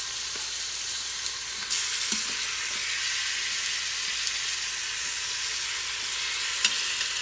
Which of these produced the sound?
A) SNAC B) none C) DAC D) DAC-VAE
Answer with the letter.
B